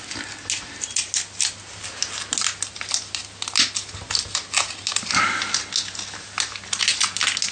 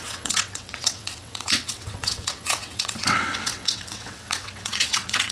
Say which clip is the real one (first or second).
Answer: first